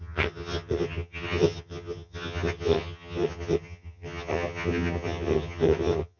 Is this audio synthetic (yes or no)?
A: yes